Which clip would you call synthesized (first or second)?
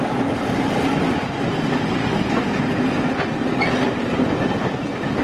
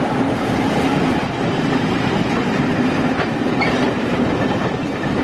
second